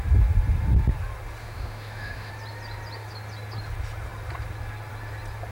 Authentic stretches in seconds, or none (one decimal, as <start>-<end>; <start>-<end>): 0.0-1.4; 2.3-5.5

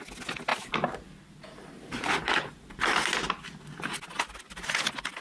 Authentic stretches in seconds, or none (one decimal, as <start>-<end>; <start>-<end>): 0.0-5.2

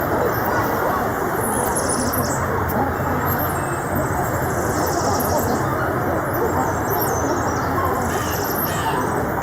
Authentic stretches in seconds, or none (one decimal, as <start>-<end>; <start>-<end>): 0.0-9.4

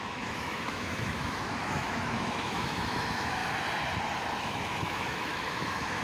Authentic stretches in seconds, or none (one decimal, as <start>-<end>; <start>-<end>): 3.4-4.4